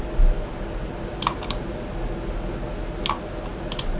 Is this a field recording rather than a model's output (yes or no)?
yes